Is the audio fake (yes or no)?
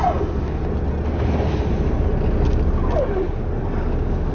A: no